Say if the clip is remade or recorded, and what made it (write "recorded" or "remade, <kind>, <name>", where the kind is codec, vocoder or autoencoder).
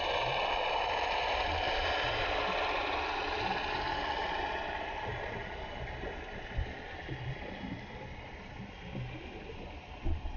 recorded